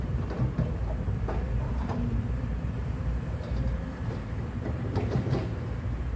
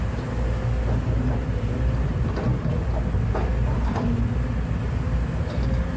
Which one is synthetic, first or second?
first